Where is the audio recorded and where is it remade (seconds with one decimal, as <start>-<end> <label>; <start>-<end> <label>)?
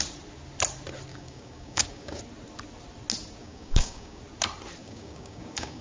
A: 0.0-1.1 recorded; 1.1-2.2 remade; 2.2-3.4 recorded; 3.4-4.2 remade; 4.2-4.8 recorded; 4.8-5.8 remade